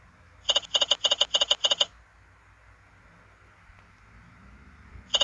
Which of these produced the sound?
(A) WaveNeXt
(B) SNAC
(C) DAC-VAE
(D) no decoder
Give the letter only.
D